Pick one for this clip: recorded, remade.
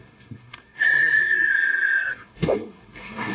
remade